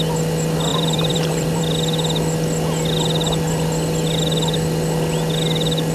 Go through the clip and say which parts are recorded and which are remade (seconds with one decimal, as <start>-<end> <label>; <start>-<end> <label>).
0.0-0.7 recorded; 0.7-1.6 remade; 1.6-5.9 recorded